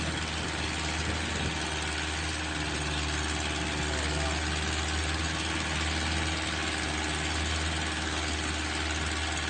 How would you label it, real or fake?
real